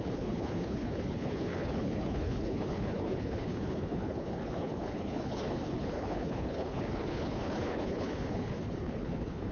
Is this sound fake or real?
fake